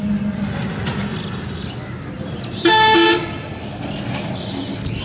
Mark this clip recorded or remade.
recorded